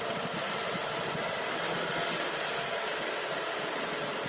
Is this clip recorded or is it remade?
recorded